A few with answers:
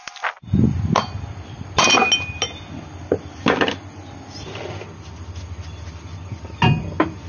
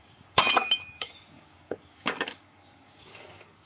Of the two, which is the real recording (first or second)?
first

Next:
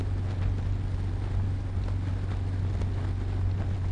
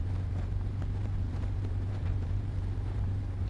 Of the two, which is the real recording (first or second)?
first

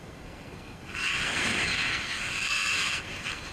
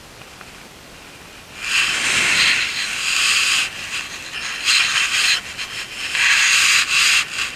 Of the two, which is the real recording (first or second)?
second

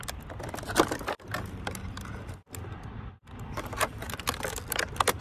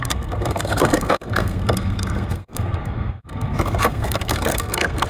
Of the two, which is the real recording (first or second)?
first